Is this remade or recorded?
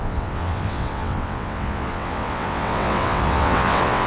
remade